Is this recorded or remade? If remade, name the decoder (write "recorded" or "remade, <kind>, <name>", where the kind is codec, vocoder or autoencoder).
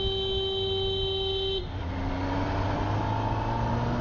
recorded